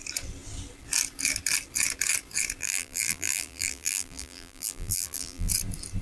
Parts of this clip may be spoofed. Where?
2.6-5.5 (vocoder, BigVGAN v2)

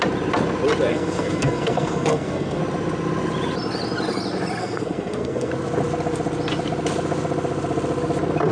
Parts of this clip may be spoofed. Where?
0.9-2.6 (codec, SNAC); 4.6-5.5

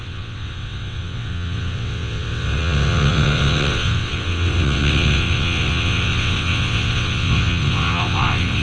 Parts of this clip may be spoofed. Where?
0.0-8.6 (vocoder, WaveNeXt)

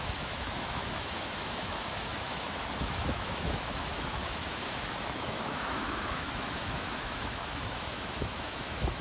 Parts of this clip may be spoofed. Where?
0.0-9.0 (autoencoder, DAC-VAE)

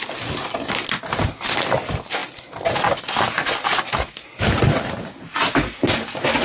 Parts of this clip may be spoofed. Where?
none

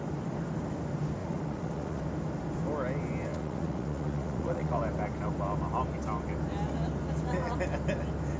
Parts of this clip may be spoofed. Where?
1.2-2.0 (vocoder, Vocos); 3.3-4.8

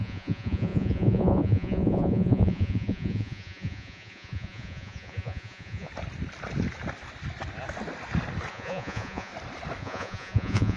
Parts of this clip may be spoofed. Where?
0.0-5.9 (vocoder, Vocos); 8.5-9.3; 9.8-10.8

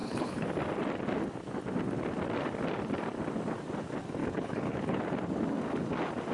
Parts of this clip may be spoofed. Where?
0.0-0.5 (codec, HILCodec); 4.2-5.0